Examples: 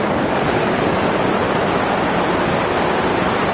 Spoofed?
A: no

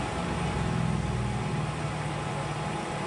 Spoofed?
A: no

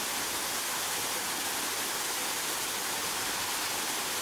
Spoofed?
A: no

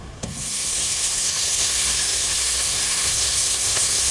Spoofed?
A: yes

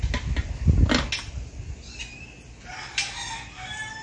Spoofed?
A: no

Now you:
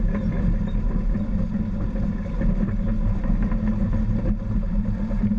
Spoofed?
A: no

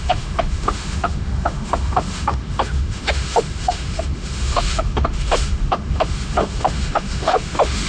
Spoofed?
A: yes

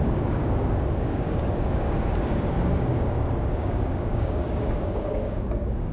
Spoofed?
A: yes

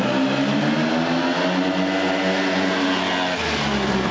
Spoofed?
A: no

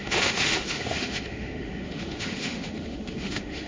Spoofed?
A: yes